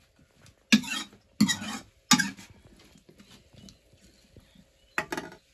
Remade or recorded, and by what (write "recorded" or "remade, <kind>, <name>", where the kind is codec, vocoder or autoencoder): recorded